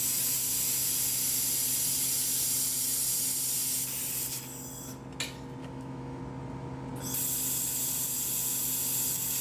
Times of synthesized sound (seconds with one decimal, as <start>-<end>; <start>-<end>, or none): 5.6-6.2